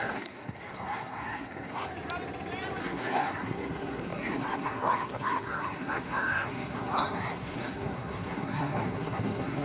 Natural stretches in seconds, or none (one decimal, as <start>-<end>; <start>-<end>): 1.9-2.8